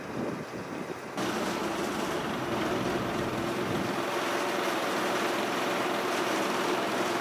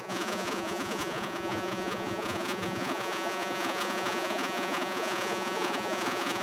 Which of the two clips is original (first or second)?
first